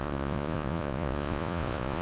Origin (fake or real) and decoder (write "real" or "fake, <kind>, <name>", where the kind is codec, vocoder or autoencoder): fake, vocoder, Vocos